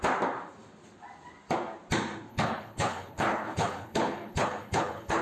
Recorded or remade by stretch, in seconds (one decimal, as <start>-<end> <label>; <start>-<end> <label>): 0.0-2.3 recorded; 2.3-5.2 remade